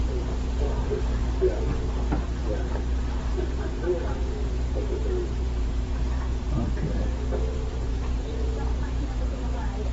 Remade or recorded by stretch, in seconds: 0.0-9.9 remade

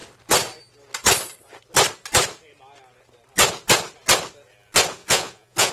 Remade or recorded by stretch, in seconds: 0.0-5.0 recorded; 5.0-5.7 remade

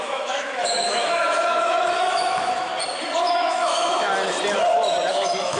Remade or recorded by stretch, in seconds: 0.0-2.7 remade; 2.7-3.2 recorded; 3.2-4.1 remade; 4.1-5.1 recorded; 5.1-5.6 remade